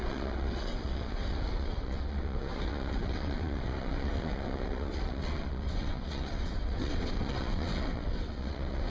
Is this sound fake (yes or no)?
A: yes